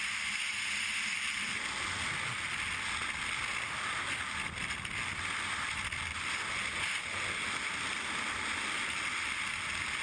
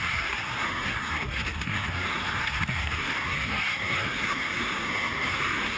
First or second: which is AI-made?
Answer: second